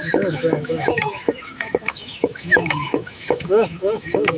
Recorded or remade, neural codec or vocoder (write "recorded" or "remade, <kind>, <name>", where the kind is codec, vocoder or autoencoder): remade, autoencoder, DAC-VAE